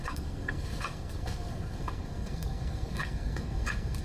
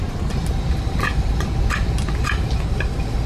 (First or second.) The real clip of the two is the second